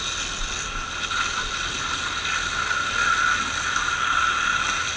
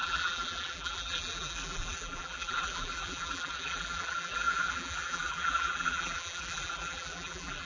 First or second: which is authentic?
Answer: first